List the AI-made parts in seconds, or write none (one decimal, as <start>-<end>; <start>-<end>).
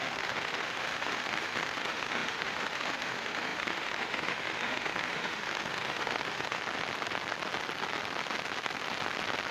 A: 0.0-6.6